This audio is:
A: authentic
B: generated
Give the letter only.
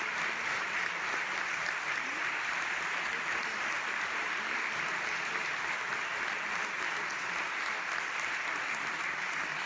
A